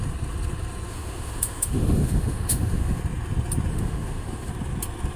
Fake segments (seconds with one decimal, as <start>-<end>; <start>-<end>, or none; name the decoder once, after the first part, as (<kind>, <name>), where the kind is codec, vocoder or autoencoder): 0.9-3.0 (autoencoder, DAC-VAE); 3.7-4.5